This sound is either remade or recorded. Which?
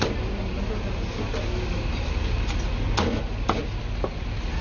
recorded